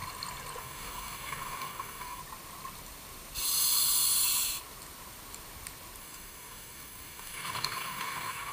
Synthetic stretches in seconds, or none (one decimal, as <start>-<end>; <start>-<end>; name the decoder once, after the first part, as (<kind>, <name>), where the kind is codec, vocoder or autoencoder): 0.6-2.2 (codec, DAC); 6.0-8.5